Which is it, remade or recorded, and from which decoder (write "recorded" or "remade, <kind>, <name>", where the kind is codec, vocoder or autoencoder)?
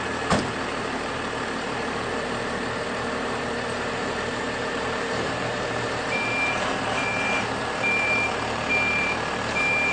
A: remade, vocoder, BigVGAN v2